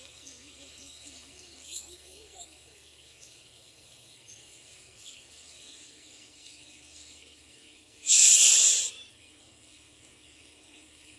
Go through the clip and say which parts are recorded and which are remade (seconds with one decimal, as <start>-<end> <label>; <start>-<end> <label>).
0.0-8.3 remade; 8.3-9.1 recorded; 9.1-11.2 remade